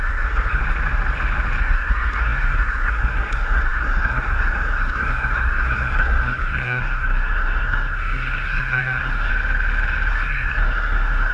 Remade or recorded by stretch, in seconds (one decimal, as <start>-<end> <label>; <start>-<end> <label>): 0.0-0.6 remade; 0.6-1.6 recorded; 1.6-9.3 remade; 9.3-10.1 recorded; 10.1-11.3 remade